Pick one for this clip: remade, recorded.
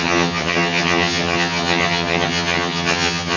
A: remade